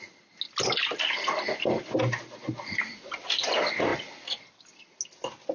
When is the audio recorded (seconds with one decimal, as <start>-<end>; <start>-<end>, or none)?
0.0-5.5